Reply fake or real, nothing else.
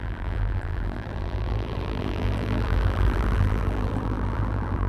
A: fake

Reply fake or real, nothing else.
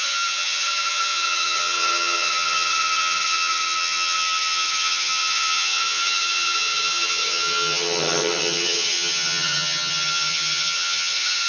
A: fake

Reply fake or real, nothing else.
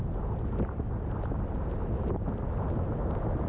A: real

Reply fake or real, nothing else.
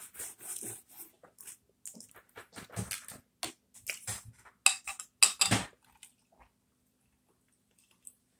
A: real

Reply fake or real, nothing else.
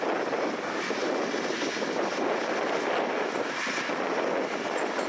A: real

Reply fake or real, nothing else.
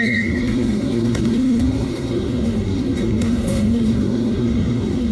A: fake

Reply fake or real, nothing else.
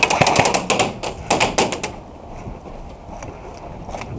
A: real